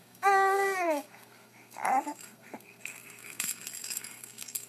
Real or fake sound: fake